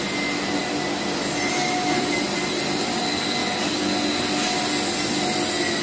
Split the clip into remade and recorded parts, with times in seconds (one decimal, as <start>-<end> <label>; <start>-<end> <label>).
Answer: 0.0-3.4 recorded; 3.4-3.9 remade; 3.9-5.8 recorded

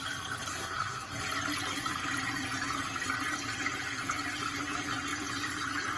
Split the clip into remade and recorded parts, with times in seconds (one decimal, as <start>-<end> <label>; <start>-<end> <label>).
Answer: 0.0-0.5 recorded; 0.5-1.1 remade; 1.1-6.0 recorded

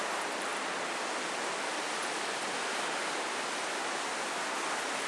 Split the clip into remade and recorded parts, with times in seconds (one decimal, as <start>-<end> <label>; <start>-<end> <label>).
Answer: 0.0-5.1 recorded

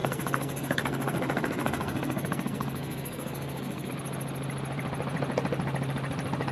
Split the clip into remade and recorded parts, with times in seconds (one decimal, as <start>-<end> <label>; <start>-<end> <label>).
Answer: 0.0-3.9 remade; 3.9-6.5 recorded

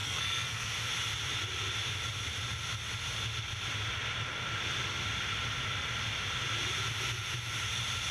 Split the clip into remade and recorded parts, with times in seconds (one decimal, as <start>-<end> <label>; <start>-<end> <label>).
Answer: 0.0-0.7 remade; 0.7-8.1 recorded